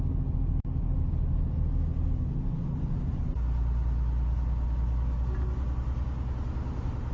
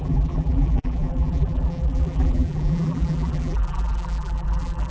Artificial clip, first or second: second